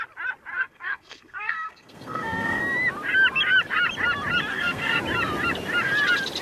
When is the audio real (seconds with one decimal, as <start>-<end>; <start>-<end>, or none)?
0.0-0.5; 2.6-4.5; 5.0-6.4